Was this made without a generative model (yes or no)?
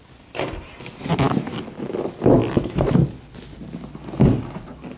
yes